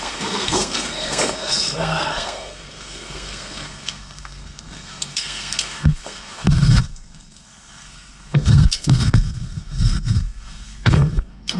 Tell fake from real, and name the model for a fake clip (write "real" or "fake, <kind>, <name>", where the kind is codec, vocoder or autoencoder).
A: fake, codec, SNAC